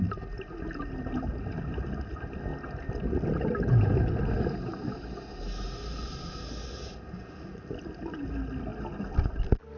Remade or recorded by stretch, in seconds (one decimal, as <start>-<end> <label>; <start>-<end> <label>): 0.0-9.8 recorded